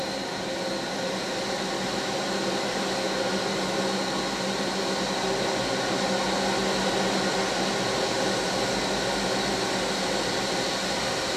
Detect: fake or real real